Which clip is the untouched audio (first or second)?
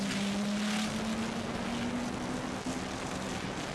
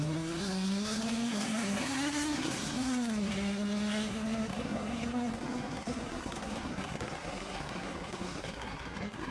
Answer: first